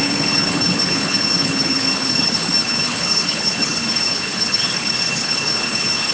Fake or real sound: fake